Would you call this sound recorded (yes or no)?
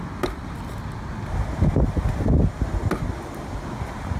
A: yes